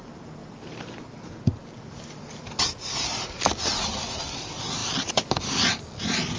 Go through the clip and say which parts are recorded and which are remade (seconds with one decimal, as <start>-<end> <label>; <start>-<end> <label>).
0.0-0.4 recorded; 0.4-1.2 remade; 1.2-4.8 recorded; 4.8-5.9 remade; 5.9-6.4 recorded

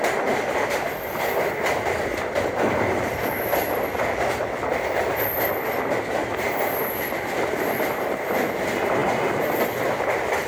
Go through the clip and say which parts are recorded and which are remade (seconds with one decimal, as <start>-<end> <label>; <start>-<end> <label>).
0.0-10.5 recorded

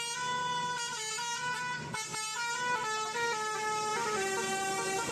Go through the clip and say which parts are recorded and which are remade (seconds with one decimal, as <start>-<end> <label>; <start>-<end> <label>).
0.0-0.4 recorded; 0.4-1.5 remade; 1.5-3.9 recorded; 3.9-5.1 remade

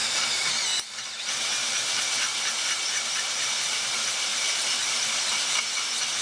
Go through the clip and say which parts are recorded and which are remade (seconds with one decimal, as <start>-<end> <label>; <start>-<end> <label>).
0.0-0.5 remade; 0.5-4.3 recorded; 4.3-5.6 remade; 5.6-6.2 recorded

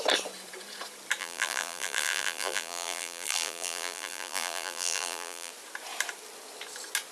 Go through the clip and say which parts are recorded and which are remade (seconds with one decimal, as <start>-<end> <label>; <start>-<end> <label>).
0.0-1.2 recorded; 1.2-5.5 remade; 5.5-7.1 recorded